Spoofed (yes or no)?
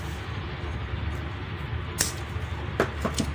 no